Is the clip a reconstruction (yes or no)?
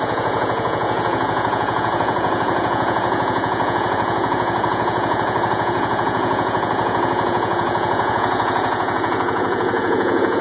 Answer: yes